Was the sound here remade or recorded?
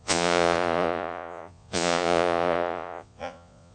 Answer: remade